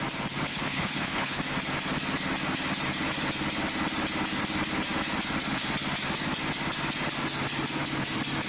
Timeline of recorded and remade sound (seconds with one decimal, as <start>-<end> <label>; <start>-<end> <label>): 0.0-0.5 recorded; 0.5-1.4 remade; 1.4-8.5 recorded